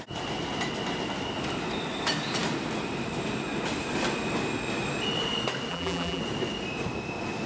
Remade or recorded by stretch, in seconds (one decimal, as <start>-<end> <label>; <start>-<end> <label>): 0.0-5.7 recorded; 5.7-6.2 remade; 6.2-7.5 recorded